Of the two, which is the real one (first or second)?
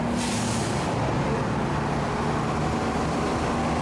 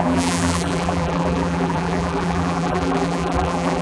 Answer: first